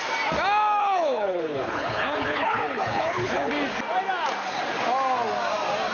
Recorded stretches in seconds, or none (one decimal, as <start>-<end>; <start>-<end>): 0.0-0.8; 3.5-5.9